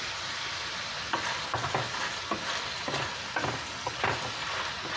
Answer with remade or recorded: recorded